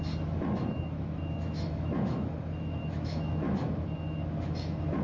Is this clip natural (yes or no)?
no